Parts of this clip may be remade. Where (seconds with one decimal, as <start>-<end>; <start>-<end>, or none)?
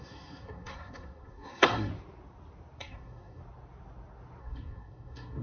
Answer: 0.0-1.9; 2.8-3.4; 4.4-5.4